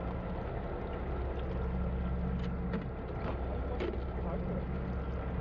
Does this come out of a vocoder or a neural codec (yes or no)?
no